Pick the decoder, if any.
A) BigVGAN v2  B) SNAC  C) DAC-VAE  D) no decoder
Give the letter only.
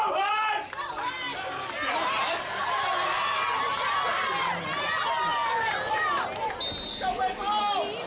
D